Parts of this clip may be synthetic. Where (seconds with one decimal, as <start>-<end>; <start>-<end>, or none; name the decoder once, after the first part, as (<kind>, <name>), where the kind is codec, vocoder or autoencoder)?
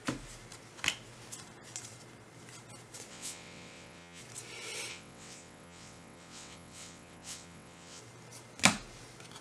3.1-4.2 (vocoder, WaveNeXt); 4.9-8.0